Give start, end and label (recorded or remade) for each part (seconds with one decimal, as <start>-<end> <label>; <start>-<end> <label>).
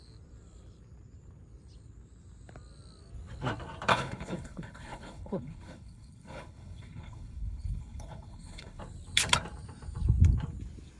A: 0.0-3.9 recorded; 3.9-8.8 remade; 8.8-11.0 recorded